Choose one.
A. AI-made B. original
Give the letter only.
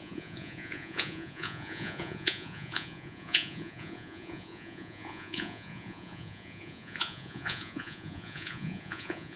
A